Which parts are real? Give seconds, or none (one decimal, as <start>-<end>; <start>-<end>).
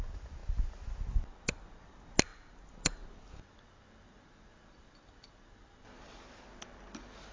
0.0-7.3